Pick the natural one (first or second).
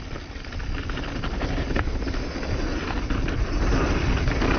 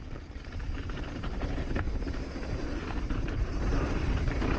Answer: first